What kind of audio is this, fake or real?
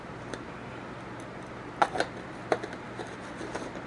real